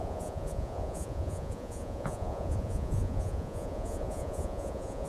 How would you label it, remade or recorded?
remade